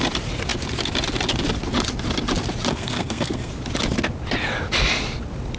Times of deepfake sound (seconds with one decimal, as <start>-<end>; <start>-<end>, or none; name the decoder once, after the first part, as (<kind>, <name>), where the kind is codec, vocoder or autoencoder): 2.7-3.5 (codec, SNAC)